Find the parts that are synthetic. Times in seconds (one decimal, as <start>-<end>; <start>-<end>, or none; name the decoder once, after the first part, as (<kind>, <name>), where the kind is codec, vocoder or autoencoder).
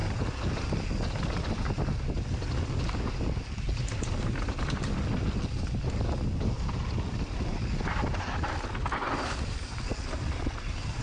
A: none